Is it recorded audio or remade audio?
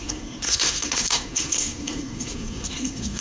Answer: remade